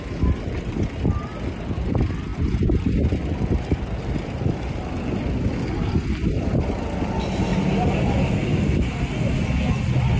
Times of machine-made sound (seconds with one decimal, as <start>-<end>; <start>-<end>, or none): none